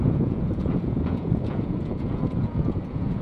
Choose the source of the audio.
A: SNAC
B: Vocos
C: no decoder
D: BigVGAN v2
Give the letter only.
B